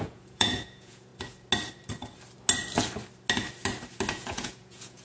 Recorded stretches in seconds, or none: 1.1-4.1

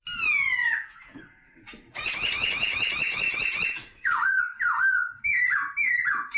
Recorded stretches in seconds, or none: 0.0-0.6; 4.4-6.4